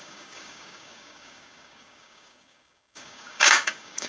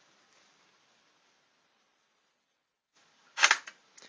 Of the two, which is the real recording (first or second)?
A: second